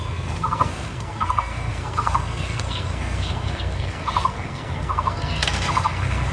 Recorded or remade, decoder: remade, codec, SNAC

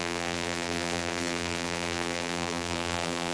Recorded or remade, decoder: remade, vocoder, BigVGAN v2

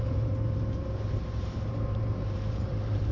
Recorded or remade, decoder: remade, vocoder, BigVGAN v2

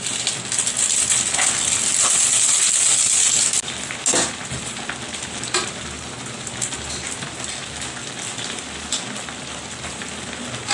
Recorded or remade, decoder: recorded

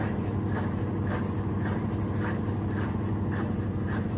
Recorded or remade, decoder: remade, vocoder, BigVGAN v2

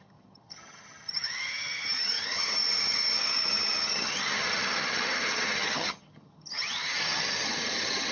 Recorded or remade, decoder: remade, vocoder, HiFi-GAN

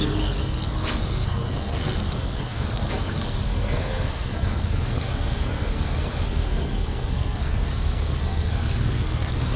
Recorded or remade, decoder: remade, codec, SNAC